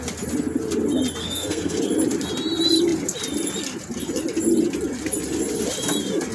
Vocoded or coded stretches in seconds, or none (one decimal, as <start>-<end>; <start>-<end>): 1.2-1.8